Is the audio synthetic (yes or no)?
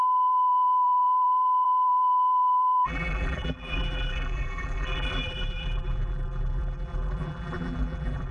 yes